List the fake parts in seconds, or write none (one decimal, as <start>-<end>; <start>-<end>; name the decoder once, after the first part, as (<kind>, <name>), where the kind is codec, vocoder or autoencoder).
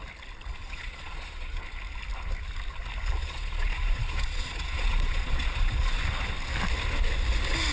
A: 0.6-1.6 (vocoder, Vocos); 3.2-6.0